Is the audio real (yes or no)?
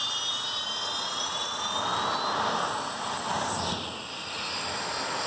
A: yes